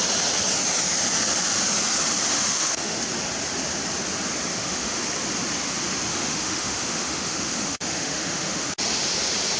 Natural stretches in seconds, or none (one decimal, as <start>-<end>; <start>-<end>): 0.0-2.3; 3.0-4.5; 5.0-6.1; 8.7-9.6